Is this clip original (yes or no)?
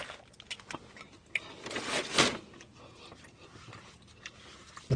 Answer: yes